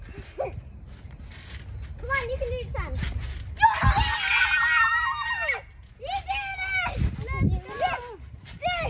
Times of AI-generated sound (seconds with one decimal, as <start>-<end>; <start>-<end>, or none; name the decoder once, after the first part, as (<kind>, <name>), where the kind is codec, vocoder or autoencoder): none